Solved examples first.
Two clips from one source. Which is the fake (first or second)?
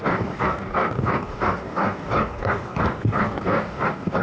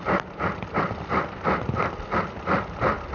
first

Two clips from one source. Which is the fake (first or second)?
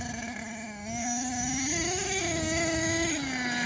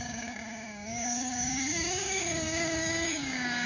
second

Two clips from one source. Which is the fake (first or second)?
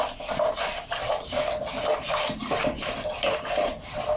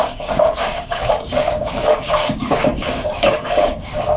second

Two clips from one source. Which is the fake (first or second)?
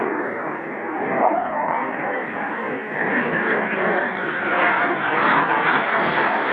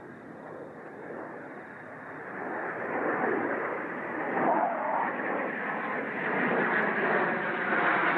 first